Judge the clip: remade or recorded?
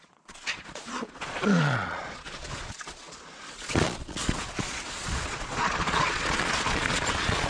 remade